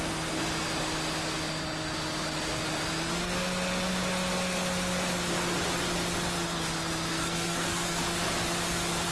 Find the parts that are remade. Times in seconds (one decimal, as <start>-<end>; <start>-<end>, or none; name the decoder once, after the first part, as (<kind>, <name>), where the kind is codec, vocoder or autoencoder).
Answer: 7.1-8.0 (codec, SNAC)